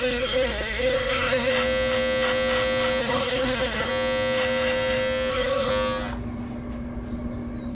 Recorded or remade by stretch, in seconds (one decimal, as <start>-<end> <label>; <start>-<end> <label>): 0.0-1.5 remade; 1.5-3.0 recorded; 3.0-3.9 remade; 3.9-5.3 recorded; 5.3-5.7 remade; 5.7-7.7 recorded